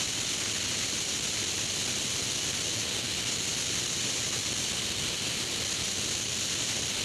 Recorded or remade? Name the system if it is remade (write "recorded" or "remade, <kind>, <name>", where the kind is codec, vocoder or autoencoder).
recorded